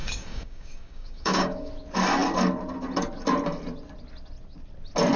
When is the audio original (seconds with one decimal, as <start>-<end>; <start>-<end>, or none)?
1.7-5.2